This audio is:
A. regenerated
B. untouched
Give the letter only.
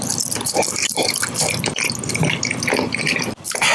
A